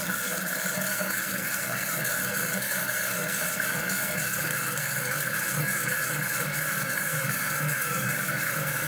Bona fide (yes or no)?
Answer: no